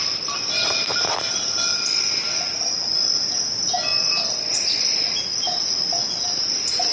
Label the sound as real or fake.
real